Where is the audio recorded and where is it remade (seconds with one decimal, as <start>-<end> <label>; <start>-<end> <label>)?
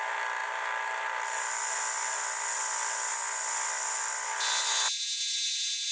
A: 0.0-5.9 recorded